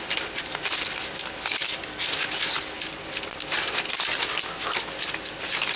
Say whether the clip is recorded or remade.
recorded